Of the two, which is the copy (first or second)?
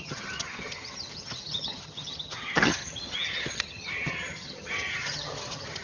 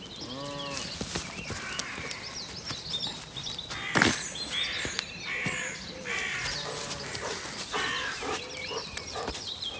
first